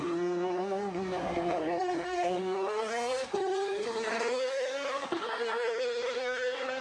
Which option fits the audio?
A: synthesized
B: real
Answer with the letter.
A